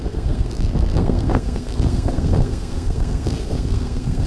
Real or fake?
fake